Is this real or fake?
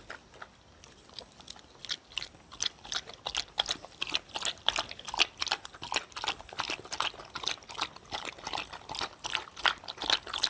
real